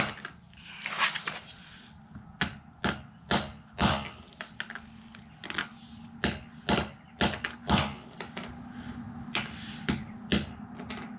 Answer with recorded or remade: recorded